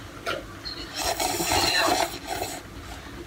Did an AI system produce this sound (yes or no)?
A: no